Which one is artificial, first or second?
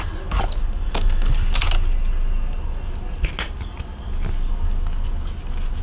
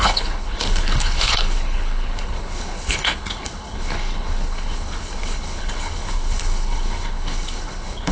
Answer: second